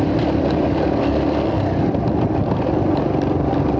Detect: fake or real real